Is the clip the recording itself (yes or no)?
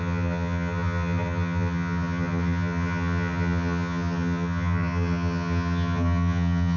no